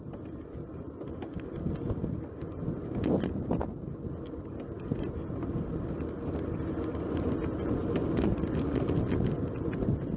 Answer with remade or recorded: recorded